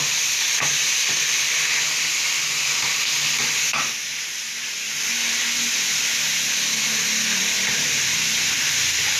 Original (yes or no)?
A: yes